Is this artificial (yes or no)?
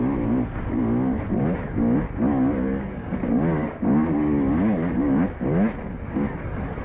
no